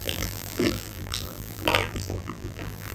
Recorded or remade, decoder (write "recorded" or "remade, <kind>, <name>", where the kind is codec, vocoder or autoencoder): remade, vocoder, BigVGAN v2